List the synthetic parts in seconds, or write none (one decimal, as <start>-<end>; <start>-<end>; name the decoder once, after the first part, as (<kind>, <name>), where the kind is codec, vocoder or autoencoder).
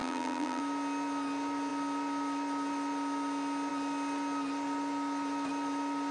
0.0-0.6 (vocoder, BigVGAN v2)